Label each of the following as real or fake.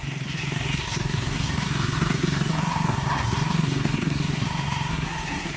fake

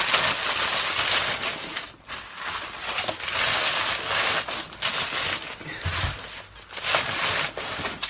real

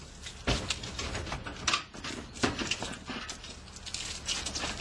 real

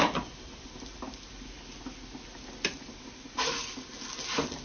real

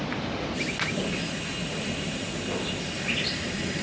real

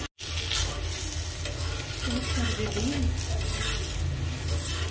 real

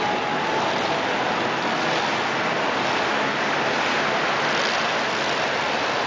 real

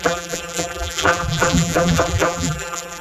fake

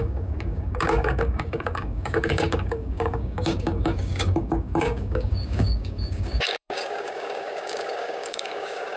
fake